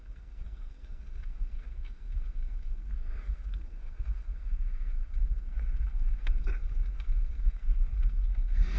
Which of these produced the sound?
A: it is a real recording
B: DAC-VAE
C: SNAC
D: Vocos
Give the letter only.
C